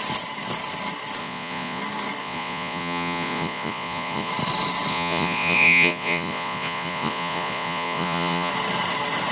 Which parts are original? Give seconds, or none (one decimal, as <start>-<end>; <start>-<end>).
0.0-1.2; 1.8-2.2; 4.3-4.9; 8.5-9.3

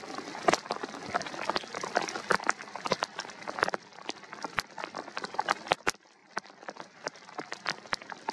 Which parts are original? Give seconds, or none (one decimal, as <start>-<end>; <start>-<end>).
0.0-8.3

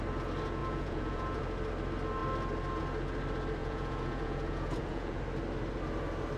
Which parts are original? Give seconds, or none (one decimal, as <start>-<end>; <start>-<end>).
0.0-0.6; 1.4-3.6; 5.2-6.4

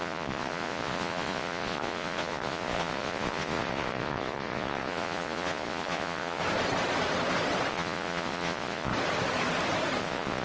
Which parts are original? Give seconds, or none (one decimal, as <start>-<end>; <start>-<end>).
6.4-7.7; 8.9-10.0

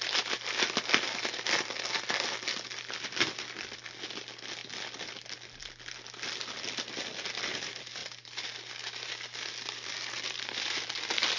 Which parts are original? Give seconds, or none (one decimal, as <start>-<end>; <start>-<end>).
0.0-11.4